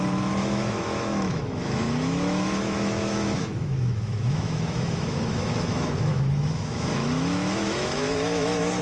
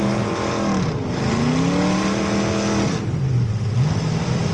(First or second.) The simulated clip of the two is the first